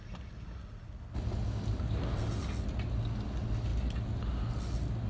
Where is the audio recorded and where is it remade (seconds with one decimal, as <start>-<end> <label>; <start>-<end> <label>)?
0.0-5.1 recorded